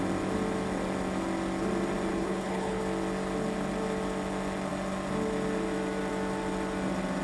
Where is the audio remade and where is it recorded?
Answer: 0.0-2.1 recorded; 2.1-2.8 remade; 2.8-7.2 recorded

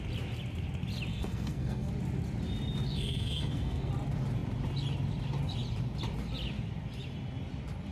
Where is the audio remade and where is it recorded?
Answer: 0.0-1.1 recorded; 1.1-1.9 remade; 1.9-2.9 recorded; 2.9-3.9 remade; 3.9-7.9 recorded

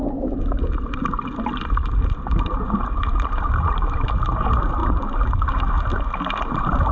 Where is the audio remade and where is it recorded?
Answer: 0.0-6.9 recorded

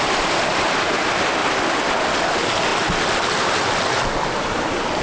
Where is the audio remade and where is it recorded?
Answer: 0.0-5.0 recorded

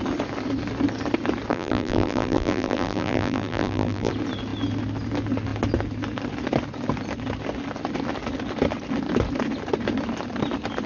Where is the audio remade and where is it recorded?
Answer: 0.0-1.5 recorded; 1.5-4.1 remade; 4.1-10.9 recorded